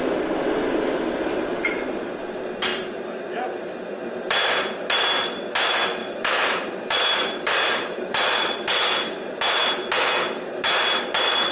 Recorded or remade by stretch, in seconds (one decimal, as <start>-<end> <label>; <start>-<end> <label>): 0.0-6.0 recorded; 6.0-9.7 remade; 9.7-11.5 recorded